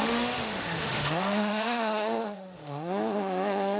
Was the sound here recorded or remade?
remade